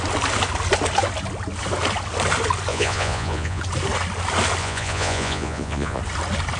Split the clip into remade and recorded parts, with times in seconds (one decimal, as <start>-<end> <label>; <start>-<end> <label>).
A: 0.0-2.7 recorded; 2.7-3.6 remade; 3.6-4.6 recorded; 4.6-6.0 remade; 6.0-6.6 recorded